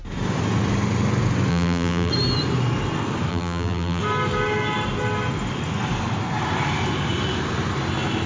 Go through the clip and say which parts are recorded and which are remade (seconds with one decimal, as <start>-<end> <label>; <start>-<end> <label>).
0.0-1.5 recorded; 1.5-2.1 remade; 2.1-3.3 recorded; 3.3-4.0 remade; 4.0-8.3 recorded